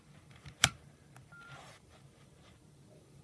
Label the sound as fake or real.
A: fake